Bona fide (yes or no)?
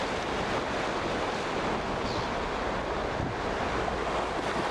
yes